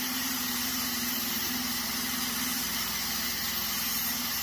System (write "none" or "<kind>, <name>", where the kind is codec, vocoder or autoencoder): vocoder, BigVGAN v2